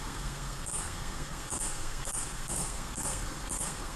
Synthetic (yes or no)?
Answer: yes